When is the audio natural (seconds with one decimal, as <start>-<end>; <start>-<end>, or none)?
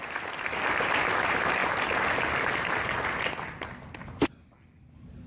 0.0-5.3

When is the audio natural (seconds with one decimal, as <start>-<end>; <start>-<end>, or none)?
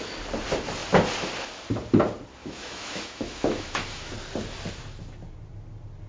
0.0-2.4; 4.1-6.1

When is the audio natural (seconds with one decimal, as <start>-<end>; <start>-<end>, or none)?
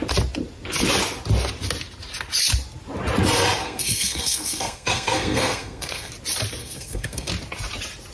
0.0-3.6; 6.1-6.6; 7.3-8.1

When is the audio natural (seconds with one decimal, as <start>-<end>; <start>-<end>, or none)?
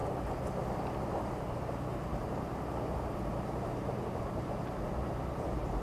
0.0-1.0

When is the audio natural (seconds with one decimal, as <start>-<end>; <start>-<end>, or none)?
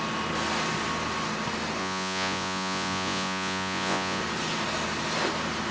0.0-1.8; 4.2-5.7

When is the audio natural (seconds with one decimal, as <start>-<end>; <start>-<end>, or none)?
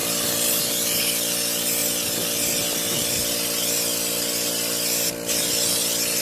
0.0-6.2